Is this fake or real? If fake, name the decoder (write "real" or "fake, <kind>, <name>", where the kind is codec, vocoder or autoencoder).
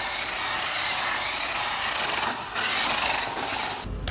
real